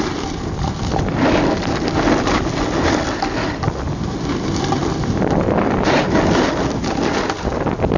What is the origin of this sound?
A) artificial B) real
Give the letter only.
B